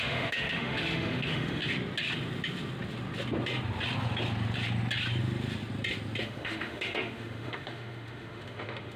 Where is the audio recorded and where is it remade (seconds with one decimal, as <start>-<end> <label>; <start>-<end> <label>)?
0.0-1.6 remade; 1.6-6.2 recorded; 6.2-9.0 remade